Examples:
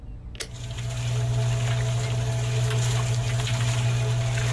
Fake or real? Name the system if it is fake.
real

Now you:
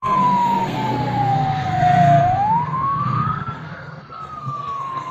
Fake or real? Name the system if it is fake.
fake, codec, SNAC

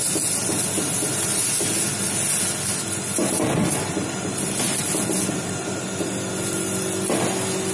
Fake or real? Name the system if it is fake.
real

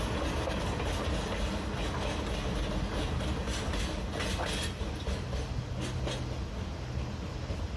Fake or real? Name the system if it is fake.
real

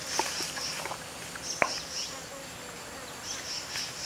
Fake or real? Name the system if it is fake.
real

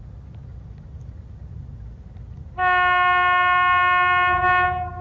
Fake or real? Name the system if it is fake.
real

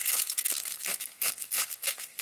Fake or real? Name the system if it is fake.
fake, codec, SNAC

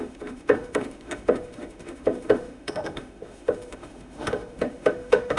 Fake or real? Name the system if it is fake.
fake, autoencoder, DAC-VAE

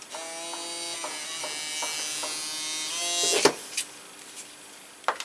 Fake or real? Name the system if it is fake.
real